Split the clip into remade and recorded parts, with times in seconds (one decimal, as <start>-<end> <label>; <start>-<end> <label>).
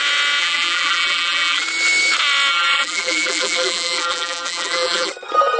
0.0-0.4 recorded; 0.4-1.6 remade; 1.6-2.5 recorded; 2.5-5.1 remade; 5.1-5.6 recorded